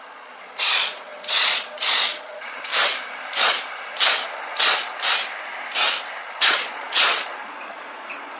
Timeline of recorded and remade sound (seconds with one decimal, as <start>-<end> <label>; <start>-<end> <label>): 0.0-2.7 remade; 2.7-6.2 recorded; 6.2-8.4 remade